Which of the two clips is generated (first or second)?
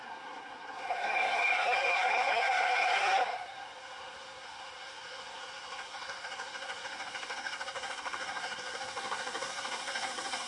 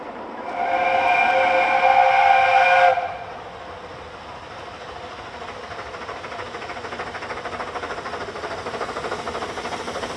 first